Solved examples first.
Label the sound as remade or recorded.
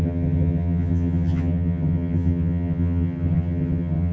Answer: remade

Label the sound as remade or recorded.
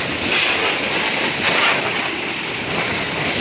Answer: remade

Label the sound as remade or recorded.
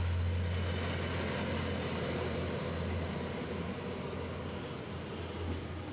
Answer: recorded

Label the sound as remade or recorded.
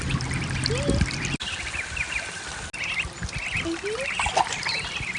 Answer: recorded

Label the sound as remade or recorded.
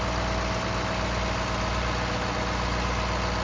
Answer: recorded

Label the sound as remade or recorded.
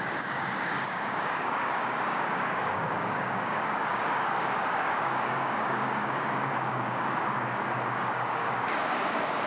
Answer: remade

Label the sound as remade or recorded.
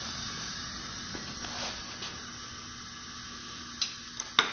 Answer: recorded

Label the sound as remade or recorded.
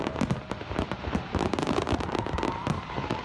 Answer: remade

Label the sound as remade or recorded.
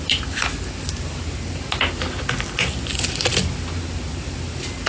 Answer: recorded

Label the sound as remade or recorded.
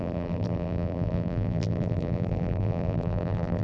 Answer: remade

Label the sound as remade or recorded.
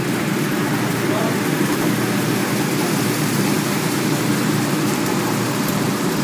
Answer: remade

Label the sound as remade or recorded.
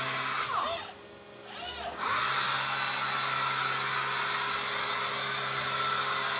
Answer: recorded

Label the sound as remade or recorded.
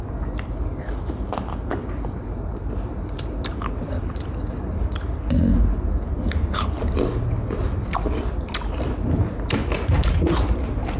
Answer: recorded